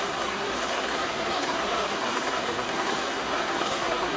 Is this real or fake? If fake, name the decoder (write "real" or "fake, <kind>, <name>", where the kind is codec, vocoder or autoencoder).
fake, codec, SNAC